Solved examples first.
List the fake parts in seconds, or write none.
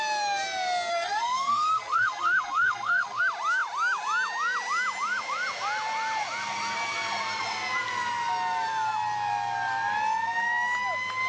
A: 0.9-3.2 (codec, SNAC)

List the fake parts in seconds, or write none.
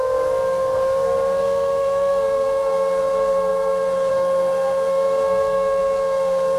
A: 0.0-6.6 (codec, SNAC)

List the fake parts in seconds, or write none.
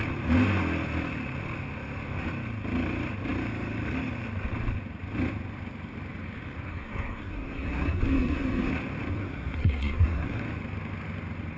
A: 6.7-8.7 (codec, SNAC); 9.2-10.4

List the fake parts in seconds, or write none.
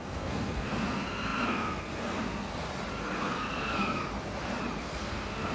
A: 0.0-2.5 (codec, SNAC); 3.0-4.0; 4.8-5.5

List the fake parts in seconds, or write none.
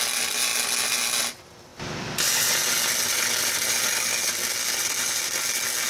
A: none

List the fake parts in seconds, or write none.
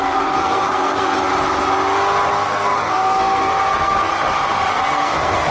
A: 0.0-1.3 (codec, SNAC); 2.3-4.1; 4.7-5.5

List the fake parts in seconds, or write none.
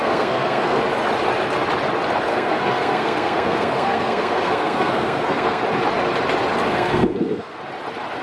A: 0.0-0.8 (codec, SNAC); 2.3-5.6; 6.7-7.6